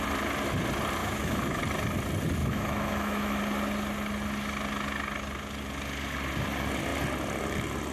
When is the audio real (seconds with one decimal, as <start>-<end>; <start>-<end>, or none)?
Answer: 0.0-1.0; 1.6-2.4; 3.4-7.9